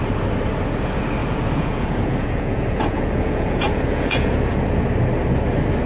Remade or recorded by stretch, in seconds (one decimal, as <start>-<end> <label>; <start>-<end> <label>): 0.0-1.2 recorded; 1.2-4.6 remade; 4.6-5.9 recorded

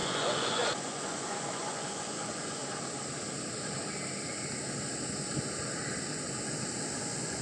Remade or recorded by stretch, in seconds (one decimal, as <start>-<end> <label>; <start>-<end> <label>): 0.0-2.6 remade; 2.6-7.0 recorded; 7.0-7.4 remade

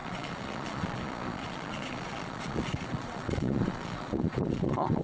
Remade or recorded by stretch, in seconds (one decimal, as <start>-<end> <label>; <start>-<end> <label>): 0.0-5.0 remade